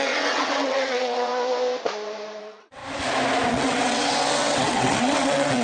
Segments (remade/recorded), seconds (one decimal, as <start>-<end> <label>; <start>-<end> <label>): 0.0-1.3 remade; 1.3-2.4 recorded; 2.4-2.8 remade; 2.8-3.5 recorded; 3.5-5.6 remade